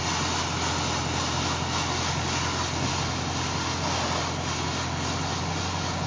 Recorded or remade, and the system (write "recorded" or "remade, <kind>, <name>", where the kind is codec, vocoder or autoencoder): recorded